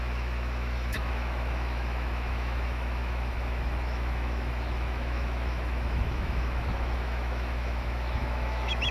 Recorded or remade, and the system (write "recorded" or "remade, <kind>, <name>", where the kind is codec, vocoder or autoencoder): remade, autoencoder, DAC-VAE